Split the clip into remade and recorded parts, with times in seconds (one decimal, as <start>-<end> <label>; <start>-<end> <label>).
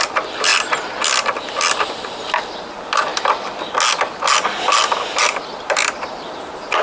0.0-3.1 remade; 3.1-5.2 recorded; 5.2-6.8 remade